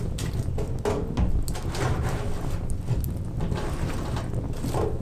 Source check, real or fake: real